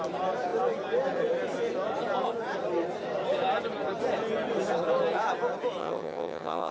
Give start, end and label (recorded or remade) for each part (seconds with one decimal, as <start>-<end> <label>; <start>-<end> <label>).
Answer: 0.0-5.8 recorded; 5.8-6.7 remade